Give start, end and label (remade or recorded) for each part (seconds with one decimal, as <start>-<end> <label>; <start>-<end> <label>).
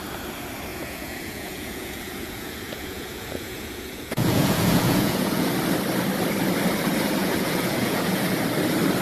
0.0-0.7 recorded; 0.7-5.5 remade; 5.5-7.2 recorded; 7.2-8.2 remade; 8.2-9.0 recorded